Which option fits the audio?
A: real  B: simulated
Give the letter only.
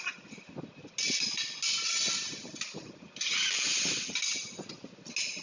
A